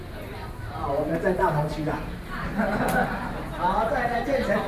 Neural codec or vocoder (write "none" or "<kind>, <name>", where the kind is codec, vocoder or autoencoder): vocoder, BigVGAN v2